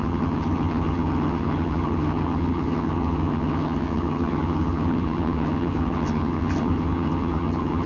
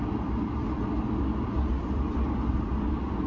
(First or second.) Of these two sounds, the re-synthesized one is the first